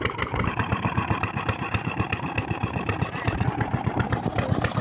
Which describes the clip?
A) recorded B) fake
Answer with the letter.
B